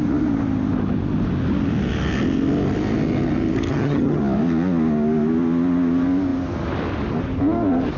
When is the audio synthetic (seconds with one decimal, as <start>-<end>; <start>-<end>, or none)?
3.7-4.2